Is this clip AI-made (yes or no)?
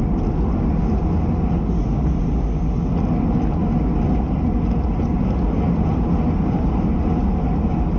no